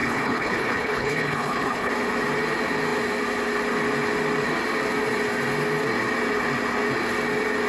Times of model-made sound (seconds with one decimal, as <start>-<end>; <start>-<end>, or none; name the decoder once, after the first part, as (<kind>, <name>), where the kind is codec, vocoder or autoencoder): 0.0-1.9 (codec, HILCodec)